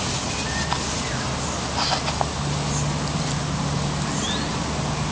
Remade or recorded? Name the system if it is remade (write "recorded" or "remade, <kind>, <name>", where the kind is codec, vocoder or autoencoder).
recorded